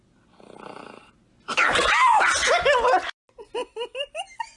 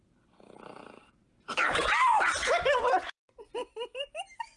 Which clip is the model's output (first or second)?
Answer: second